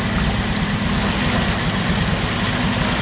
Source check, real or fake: real